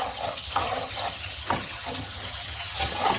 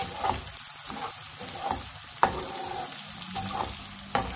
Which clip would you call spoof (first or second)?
first